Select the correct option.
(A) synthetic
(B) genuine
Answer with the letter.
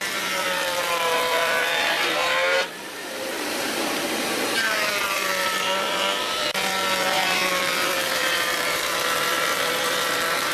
A